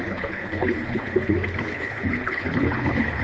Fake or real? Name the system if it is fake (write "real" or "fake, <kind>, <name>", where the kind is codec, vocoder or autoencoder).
fake, codec, HILCodec